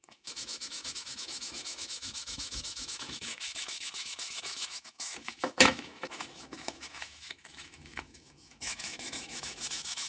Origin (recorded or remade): remade